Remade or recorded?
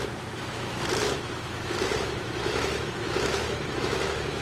remade